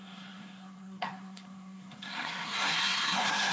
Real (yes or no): no